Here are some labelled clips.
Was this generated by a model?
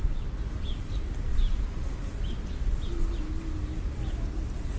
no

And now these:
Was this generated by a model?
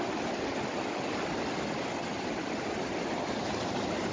no